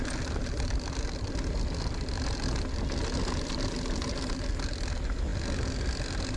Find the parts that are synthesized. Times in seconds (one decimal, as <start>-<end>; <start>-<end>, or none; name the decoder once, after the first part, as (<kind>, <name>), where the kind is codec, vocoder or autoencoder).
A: none